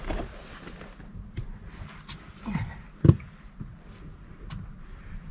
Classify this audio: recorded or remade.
recorded